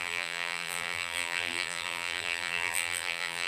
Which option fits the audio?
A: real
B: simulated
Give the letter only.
B